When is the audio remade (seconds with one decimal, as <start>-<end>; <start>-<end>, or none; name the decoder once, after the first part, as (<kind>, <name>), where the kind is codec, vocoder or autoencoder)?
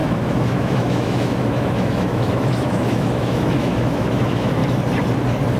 0.0-4.6 (autoencoder, DAC-VAE)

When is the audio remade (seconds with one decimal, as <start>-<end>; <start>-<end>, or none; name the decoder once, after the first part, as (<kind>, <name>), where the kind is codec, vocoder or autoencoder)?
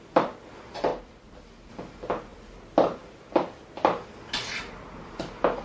none